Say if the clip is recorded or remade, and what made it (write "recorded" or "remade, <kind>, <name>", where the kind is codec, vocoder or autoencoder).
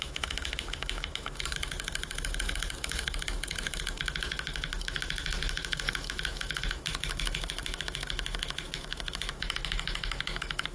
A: remade, autoencoder, DAC-VAE